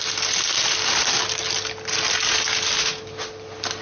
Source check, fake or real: real